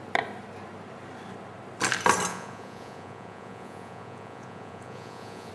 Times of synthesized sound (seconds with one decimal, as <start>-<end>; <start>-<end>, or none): 2.3-5.5

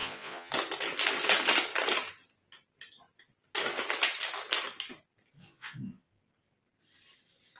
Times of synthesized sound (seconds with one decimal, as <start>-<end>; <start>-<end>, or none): 0.0-0.5; 5.4-6.1

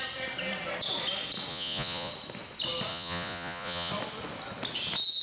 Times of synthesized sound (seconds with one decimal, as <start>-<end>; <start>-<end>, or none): 1.5-2.1; 2.9-3.9

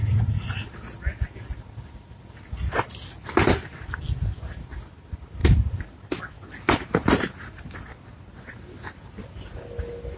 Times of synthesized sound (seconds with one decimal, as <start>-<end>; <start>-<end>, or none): 0.0-0.7